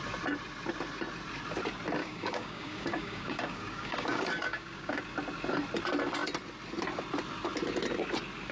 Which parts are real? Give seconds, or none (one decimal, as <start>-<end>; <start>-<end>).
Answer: 0.0-2.0; 5.0-8.5